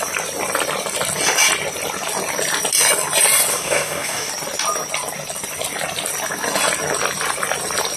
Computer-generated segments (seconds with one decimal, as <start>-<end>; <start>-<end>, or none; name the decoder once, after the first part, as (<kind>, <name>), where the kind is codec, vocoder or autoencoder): 3.5-4.3 (codec, DAC)